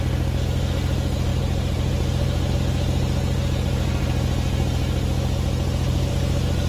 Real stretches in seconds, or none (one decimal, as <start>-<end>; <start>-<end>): 0.0-1.3; 2.5-6.7